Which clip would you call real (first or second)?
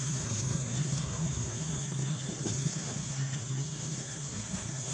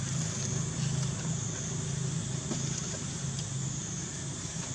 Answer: second